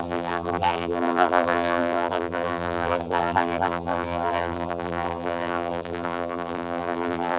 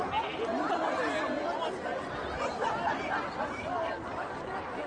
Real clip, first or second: second